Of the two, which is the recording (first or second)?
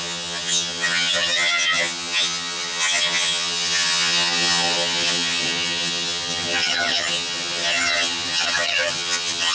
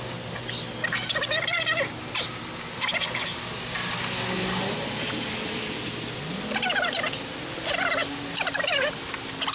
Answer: second